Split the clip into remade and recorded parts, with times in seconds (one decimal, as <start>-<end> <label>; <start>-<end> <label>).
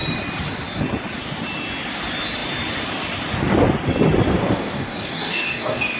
0.0-4.4 recorded; 4.4-6.0 remade